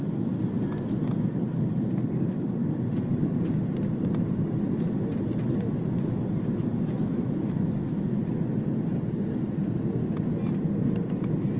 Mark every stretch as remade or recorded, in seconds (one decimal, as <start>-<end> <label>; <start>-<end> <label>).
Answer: 0.0-7.0 recorded; 7.0-8.2 remade; 8.2-11.6 recorded